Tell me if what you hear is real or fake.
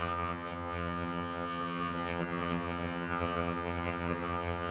fake